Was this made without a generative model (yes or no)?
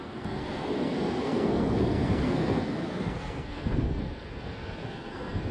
no